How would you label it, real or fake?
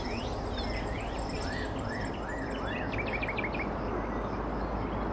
real